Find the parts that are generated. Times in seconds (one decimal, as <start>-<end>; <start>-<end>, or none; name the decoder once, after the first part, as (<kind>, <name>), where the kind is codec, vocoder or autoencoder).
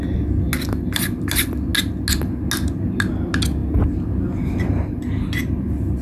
none